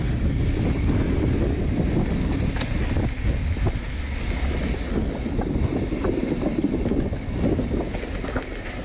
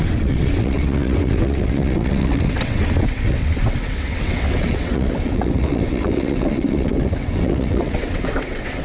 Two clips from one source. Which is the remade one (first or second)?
second